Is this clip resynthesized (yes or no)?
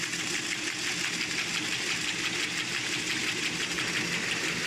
no